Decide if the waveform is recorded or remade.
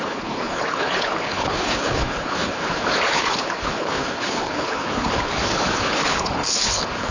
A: remade